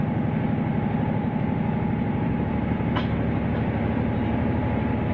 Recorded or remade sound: remade